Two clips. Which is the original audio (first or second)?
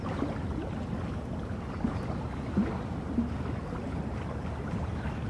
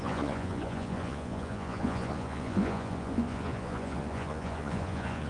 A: first